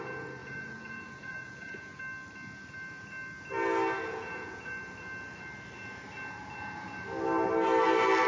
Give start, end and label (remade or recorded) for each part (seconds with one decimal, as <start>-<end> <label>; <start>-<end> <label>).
0.0-0.4 recorded; 0.4-2.0 remade; 2.0-4.1 recorded; 4.1-4.7 remade; 4.7-8.3 recorded